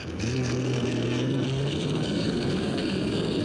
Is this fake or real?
fake